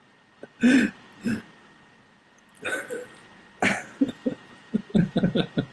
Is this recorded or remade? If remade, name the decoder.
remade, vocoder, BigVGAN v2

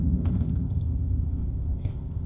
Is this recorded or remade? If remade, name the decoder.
remade, codec, ZipCodec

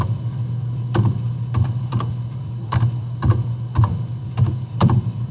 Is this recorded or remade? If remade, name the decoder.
remade, vocoder, BigVGAN v2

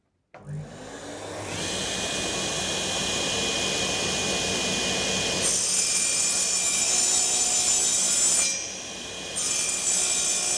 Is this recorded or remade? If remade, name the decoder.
recorded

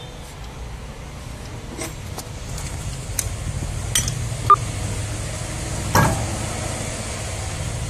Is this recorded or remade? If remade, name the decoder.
recorded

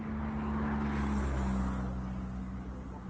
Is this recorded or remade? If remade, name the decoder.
recorded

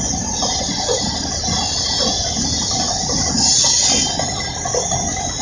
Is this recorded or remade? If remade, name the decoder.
recorded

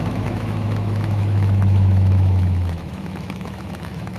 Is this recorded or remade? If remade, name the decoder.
remade, autoencoder, DAC-VAE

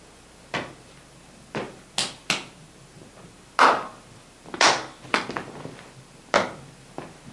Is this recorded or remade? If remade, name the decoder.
recorded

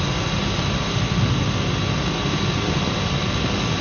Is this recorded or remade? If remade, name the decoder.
recorded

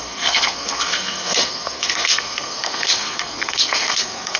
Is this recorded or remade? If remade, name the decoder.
remade, codec, SNAC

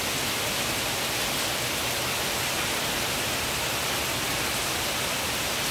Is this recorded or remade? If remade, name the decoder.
recorded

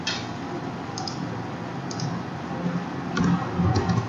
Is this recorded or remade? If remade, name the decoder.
recorded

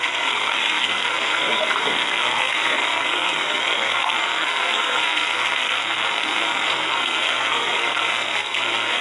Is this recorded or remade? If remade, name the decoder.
remade, codec, SNAC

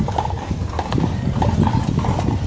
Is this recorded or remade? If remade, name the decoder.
recorded